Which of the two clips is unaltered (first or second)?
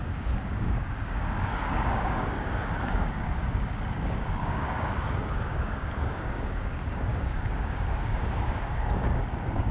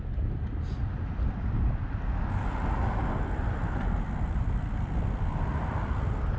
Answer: second